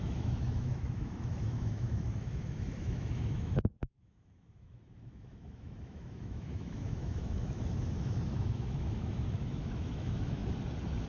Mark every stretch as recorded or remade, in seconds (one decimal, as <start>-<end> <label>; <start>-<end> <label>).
0.0-10.4 remade; 10.4-11.1 recorded

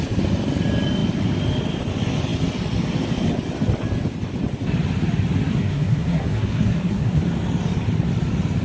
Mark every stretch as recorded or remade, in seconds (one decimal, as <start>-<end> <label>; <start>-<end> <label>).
0.0-5.5 recorded; 5.5-7.2 remade; 7.2-8.6 recorded

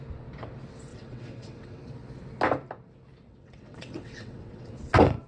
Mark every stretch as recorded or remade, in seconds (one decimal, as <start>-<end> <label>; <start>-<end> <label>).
0.0-0.9 recorded; 0.9-1.8 remade; 1.8-3.3 recorded; 3.3-4.7 remade; 4.7-5.3 recorded

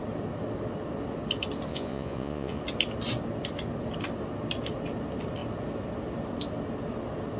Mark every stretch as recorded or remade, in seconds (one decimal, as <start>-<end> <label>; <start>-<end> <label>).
0.0-1.7 recorded; 1.7-2.6 remade; 2.6-7.4 recorded

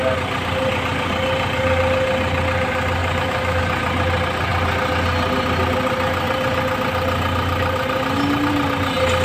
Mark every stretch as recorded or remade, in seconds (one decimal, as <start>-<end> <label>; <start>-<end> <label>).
0.0-3.0 recorded; 3.0-3.6 remade; 3.6-9.2 recorded

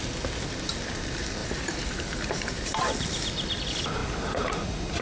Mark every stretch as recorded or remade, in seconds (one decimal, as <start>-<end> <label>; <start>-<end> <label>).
0.0-1.4 recorded; 1.4-2.8 remade; 2.8-4.0 recorded; 4.0-4.5 remade; 4.5-5.0 recorded

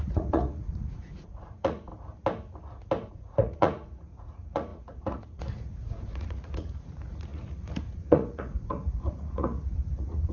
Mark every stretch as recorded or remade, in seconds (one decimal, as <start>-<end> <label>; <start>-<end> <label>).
0.0-1.9 remade; 1.9-3.1 recorded; 3.1-10.3 remade

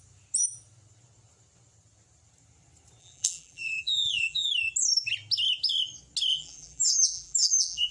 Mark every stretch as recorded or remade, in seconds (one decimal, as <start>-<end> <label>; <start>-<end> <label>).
0.0-3.0 recorded; 3.0-4.5 remade; 4.5-6.3 recorded; 6.3-7.9 remade